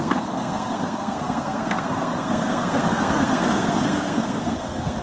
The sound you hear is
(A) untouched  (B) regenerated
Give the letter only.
B